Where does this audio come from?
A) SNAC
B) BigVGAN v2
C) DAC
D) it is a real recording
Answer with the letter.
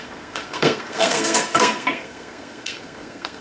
A